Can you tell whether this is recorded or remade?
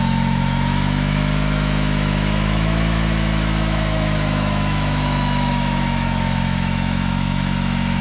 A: remade